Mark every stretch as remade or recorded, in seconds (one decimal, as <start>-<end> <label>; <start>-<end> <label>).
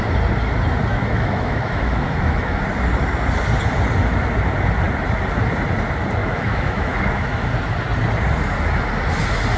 0.0-0.9 recorded; 0.9-2.6 remade; 2.6-6.2 recorded; 6.2-7.5 remade; 7.5-9.6 recorded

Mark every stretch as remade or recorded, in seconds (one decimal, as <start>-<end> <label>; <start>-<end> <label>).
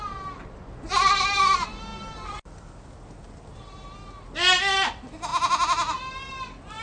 0.0-6.8 recorded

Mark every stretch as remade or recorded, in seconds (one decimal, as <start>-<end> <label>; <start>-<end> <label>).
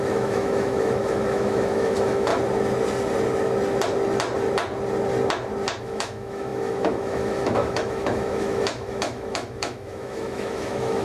0.0-2.3 remade; 2.3-5.8 recorded; 5.8-11.0 remade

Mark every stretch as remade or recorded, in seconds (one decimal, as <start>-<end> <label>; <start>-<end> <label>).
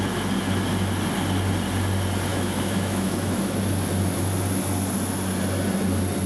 0.0-2.3 recorded; 2.3-3.6 remade; 3.6-6.3 recorded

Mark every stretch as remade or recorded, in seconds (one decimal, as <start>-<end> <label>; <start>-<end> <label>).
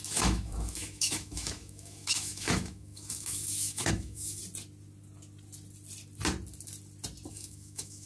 0.0-4.4 remade; 4.4-7.3 recorded; 7.3-8.1 remade